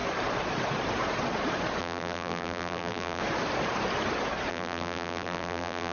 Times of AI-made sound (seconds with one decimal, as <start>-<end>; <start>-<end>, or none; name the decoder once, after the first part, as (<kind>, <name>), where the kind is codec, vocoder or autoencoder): 1.8-3.2 (vocoder, BigVGAN v2); 4.5-5.9

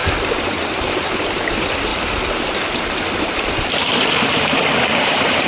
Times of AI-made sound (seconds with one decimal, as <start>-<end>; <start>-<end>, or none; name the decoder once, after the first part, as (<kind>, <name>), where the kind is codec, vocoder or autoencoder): 0.0-1.1 (vocoder, BigVGAN v2); 1.9-5.5

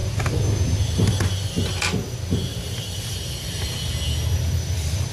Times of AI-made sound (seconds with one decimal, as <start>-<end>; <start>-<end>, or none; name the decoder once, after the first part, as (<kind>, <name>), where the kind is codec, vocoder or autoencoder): 2.5-3.9 (vocoder, BigVGAN v2)

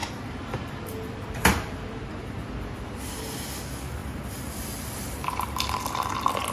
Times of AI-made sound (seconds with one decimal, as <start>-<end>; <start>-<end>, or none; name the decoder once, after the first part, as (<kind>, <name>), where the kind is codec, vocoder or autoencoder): 0.0-3.2 (vocoder, BigVGAN v2); 4.0-5.8

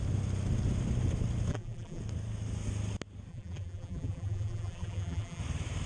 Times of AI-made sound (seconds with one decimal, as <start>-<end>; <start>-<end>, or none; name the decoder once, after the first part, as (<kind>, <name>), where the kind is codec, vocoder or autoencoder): 1.5-2.0 (vocoder, BigVGAN v2); 3.3-5.4